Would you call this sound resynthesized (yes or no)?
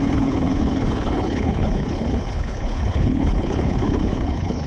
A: yes